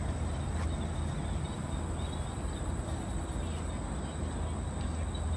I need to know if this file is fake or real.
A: real